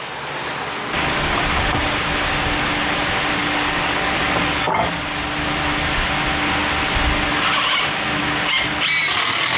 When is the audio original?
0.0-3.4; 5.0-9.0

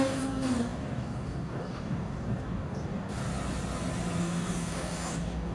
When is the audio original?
3.2-4.2

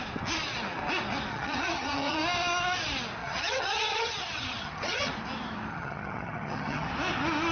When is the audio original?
0.0-1.3; 2.2-3.2; 5.1-5.7; 6.9-7.5

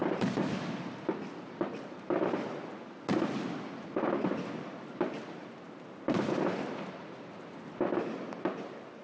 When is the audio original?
2.0-9.0

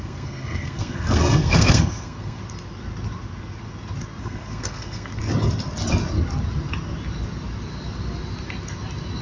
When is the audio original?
2.4-4.2; 5.1-9.2

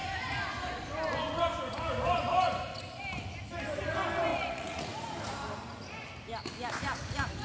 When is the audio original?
0.0-4.3; 5.1-7.4